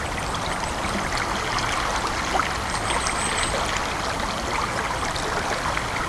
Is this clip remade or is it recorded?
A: recorded